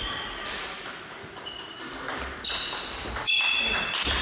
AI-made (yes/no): no